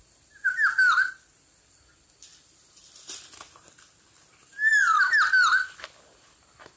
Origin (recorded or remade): recorded